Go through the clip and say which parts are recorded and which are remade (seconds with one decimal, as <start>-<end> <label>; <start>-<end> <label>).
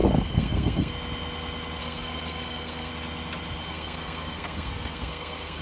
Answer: 0.0-0.9 remade; 0.9-1.8 recorded; 1.8-2.9 remade; 2.9-3.6 recorded; 3.6-5.6 remade